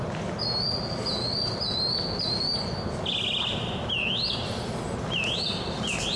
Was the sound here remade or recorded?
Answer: recorded